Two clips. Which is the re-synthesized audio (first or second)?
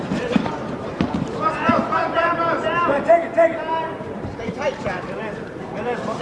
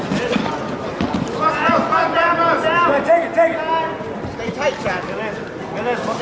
first